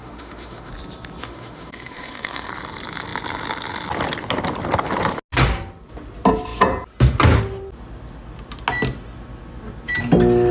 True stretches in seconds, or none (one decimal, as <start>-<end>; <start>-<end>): 0.7-1.2; 2.5-10.5